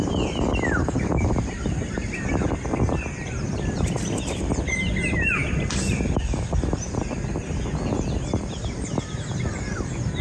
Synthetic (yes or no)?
no